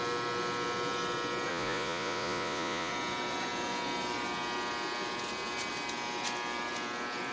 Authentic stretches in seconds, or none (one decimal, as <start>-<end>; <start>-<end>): 0.0-1.5; 2.9-7.3